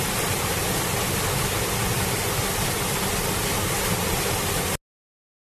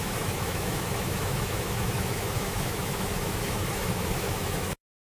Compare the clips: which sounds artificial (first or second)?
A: second